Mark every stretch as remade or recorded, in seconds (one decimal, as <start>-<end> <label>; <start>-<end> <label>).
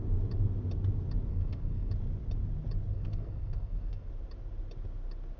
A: 0.0-1.3 recorded; 1.3-1.9 remade; 1.9-2.9 recorded; 2.9-4.1 remade; 4.1-5.4 recorded